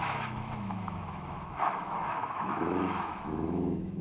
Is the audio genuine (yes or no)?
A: no